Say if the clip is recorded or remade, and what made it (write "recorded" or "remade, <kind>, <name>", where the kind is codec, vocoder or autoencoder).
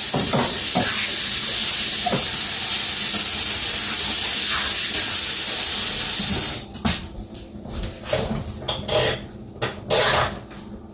recorded